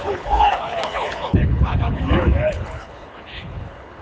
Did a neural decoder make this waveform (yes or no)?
yes